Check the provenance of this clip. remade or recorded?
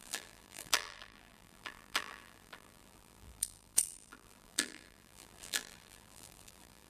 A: remade